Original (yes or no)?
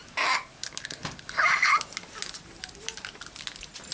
yes